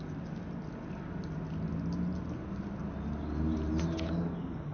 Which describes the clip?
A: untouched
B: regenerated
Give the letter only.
A